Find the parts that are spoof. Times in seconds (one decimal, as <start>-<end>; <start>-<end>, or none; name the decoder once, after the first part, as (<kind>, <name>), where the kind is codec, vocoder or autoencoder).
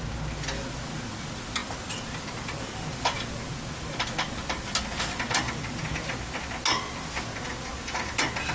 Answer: none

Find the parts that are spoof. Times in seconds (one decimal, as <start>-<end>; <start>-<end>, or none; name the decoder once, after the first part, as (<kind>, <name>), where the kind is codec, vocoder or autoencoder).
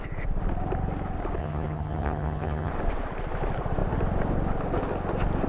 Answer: 1.4-2.7 (vocoder, HiFi-GAN)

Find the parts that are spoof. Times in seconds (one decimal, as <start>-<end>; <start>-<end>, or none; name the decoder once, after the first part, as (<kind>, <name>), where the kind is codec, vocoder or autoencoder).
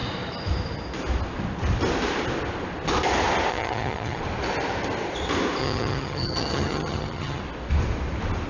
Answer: 3.5-4.2 (vocoder, HiFi-GAN); 5.6-7.4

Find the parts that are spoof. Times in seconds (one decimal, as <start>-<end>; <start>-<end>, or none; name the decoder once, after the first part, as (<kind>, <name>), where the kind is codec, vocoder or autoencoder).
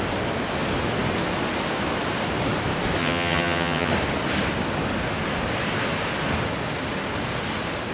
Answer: 3.0-3.9 (vocoder, HiFi-GAN)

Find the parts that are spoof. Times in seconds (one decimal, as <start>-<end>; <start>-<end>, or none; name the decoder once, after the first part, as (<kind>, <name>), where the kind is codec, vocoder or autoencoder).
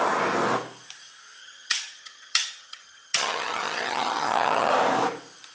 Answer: 1.4-4.7 (vocoder, HiFi-GAN)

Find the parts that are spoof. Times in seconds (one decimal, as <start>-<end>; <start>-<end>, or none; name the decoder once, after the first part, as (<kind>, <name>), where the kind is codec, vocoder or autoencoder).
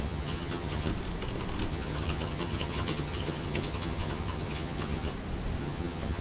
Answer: 0.0-0.9 (vocoder, HiFi-GAN); 1.7-5.1; 5.6-6.2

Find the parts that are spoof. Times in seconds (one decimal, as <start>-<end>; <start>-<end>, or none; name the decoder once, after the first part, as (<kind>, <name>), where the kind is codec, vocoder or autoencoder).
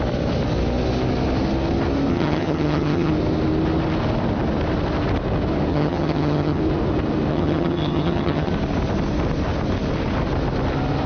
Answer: 2.1-3.1 (vocoder, HiFi-GAN); 5.7-6.6; 7.3-8.5